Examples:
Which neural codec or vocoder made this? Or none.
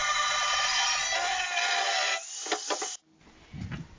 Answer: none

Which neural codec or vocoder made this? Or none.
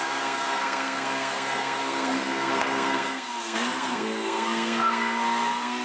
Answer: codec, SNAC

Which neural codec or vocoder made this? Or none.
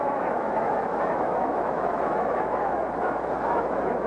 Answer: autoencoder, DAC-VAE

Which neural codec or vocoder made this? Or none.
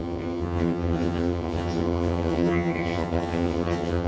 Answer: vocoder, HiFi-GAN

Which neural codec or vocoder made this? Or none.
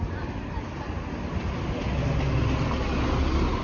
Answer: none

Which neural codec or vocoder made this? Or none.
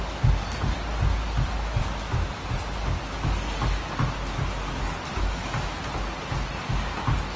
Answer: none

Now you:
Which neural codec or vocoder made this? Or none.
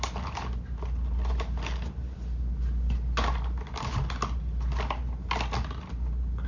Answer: none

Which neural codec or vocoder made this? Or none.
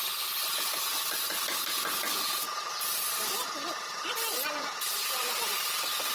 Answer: none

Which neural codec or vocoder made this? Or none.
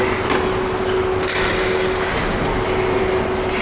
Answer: none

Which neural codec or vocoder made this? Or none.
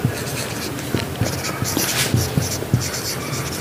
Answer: vocoder, BigVGAN v2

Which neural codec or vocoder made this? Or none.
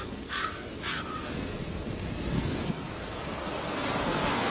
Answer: codec, SNAC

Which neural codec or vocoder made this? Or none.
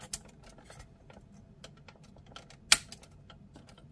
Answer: none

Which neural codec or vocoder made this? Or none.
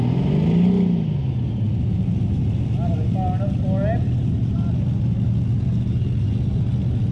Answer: none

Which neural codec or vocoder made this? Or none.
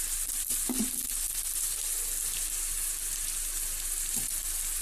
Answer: none